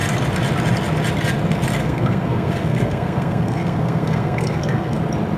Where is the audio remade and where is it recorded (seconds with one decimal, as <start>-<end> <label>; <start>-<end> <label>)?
0.0-1.8 recorded; 1.8-5.0 remade; 5.0-5.4 recorded